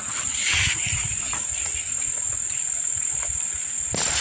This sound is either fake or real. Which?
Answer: real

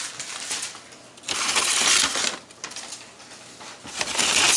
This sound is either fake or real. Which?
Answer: real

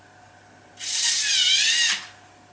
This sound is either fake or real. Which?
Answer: real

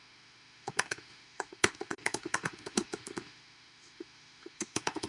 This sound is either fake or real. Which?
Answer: fake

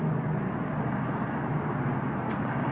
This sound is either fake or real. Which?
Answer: real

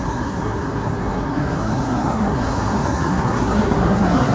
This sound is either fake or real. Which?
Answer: fake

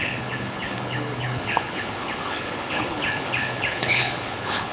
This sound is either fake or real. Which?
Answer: fake